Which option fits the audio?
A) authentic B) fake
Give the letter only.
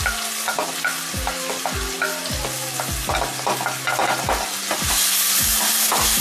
A